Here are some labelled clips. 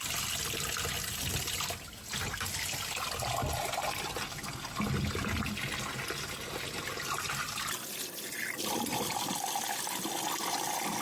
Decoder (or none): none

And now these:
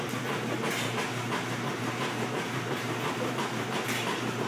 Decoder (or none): vocoder, BigVGAN v2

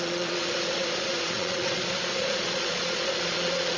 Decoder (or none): vocoder, Vocos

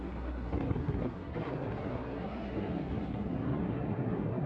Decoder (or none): codec, SNAC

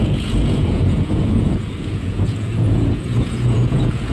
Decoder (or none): vocoder, Vocos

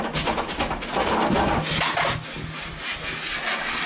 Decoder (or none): none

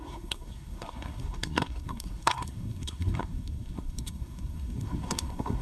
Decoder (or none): codec, SNAC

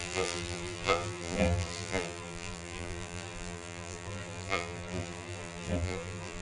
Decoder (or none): vocoder, BigVGAN v2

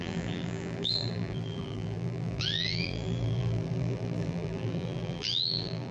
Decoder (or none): vocoder, BigVGAN v2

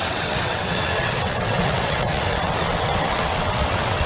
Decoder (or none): vocoder, WaveNeXt